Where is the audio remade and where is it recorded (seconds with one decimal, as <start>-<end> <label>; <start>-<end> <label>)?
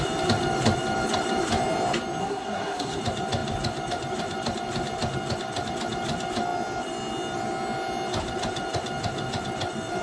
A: 0.0-2.2 recorded; 2.2-3.0 remade; 3.0-10.0 recorded